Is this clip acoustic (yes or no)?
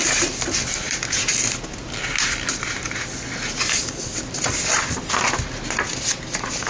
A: yes